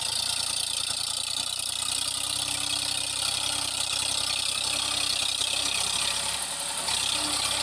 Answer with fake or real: real